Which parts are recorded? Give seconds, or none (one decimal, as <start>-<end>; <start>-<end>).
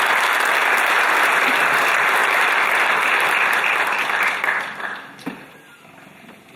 0.0-2.2